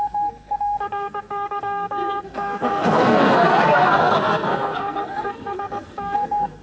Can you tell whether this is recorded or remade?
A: remade